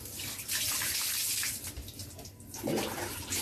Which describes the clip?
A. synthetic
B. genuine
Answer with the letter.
B